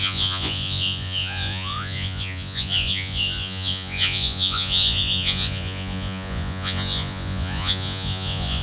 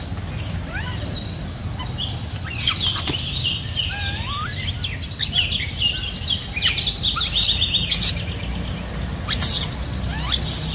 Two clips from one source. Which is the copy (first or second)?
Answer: first